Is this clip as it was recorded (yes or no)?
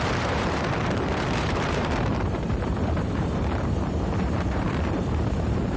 no